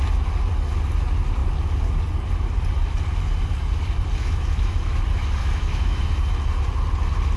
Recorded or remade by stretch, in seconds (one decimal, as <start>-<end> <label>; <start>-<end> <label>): 0.0-4.2 recorded; 4.2-5.0 remade; 5.0-5.4 recorded; 5.4-6.2 remade; 6.2-7.4 recorded